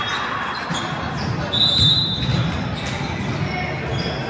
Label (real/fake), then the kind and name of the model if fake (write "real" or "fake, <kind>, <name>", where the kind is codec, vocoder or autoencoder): real